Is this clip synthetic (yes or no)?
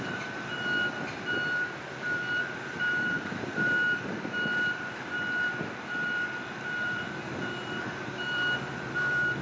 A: yes